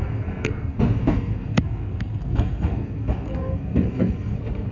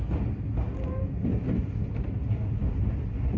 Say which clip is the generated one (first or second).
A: first